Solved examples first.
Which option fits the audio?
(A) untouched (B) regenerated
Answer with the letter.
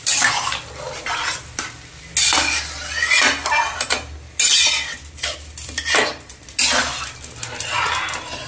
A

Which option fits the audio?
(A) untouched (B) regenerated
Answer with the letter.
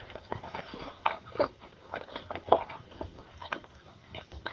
B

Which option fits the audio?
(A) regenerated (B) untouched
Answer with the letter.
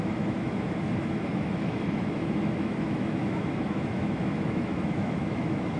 A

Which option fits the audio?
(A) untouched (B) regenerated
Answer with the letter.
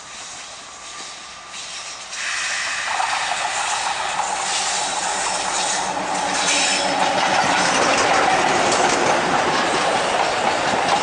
A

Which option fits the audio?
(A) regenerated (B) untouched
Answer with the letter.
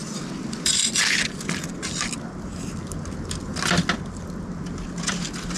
B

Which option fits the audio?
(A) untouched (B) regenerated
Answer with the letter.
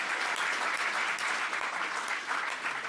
A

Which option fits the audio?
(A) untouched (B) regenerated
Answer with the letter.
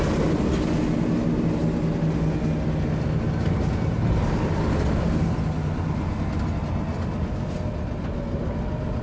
A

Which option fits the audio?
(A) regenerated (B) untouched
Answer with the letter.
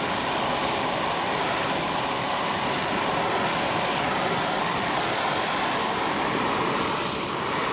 A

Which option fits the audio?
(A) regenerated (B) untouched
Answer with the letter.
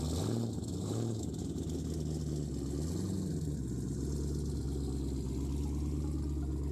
B